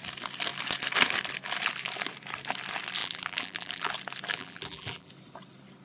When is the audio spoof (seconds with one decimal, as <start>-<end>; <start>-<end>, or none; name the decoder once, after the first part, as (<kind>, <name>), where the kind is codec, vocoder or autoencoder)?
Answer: 3.0-3.9 (vocoder, BigVGAN v2); 4.3-5.1

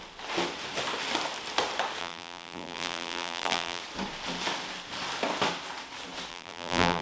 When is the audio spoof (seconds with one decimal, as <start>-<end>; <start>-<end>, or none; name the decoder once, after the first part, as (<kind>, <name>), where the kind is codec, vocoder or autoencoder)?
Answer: 2.0-3.8 (vocoder, BigVGAN v2); 6.3-7.0